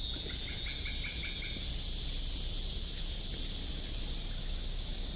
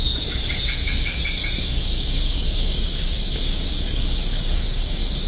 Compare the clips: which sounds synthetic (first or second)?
second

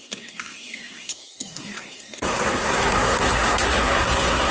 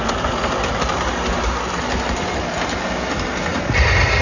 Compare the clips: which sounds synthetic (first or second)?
first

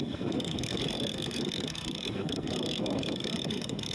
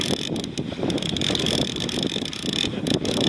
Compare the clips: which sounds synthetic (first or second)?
first